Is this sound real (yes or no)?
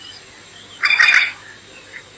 yes